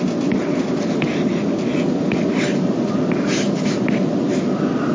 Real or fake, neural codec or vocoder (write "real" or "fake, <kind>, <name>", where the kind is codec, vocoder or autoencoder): real